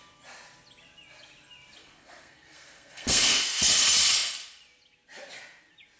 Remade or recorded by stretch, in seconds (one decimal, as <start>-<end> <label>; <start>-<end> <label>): 0.0-1.8 recorded; 1.8-3.6 remade; 3.6-6.0 recorded